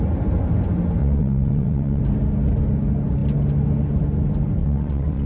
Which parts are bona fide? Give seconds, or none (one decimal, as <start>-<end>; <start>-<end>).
0.0-1.0; 2.0-4.6